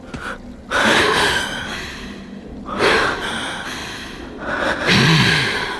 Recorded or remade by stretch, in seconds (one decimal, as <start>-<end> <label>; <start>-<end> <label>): 0.0-0.8 recorded; 0.8-1.4 remade; 1.4-5.8 recorded